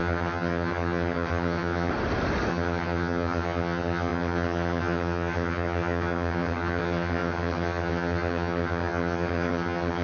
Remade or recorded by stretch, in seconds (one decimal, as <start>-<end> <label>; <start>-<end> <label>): 0.0-1.9 remade; 1.9-2.5 recorded; 2.5-10.0 remade